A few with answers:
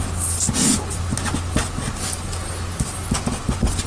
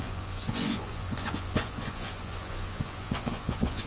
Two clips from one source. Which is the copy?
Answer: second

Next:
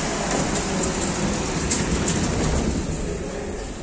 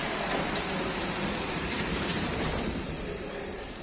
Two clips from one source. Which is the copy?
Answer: second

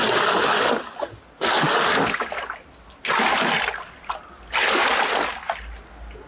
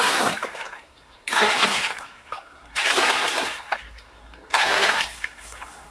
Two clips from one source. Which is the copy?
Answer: second